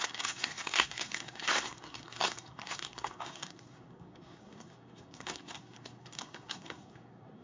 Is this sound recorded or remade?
remade